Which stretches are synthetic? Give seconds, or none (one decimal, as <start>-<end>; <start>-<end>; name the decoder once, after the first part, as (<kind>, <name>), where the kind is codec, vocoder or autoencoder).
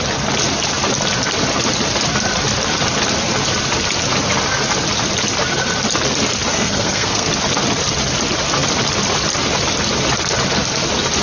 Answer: 6.5-7.3 (codec, SNAC)